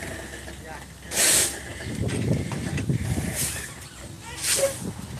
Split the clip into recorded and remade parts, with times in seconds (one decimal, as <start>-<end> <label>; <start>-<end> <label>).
0.0-1.7 recorded; 1.7-4.0 remade; 4.0-5.2 recorded